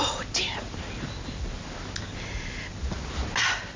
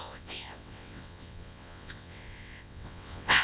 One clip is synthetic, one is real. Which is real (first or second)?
first